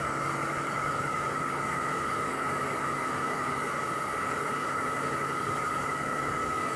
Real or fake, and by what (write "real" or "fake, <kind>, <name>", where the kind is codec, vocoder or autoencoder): fake, codec, DAC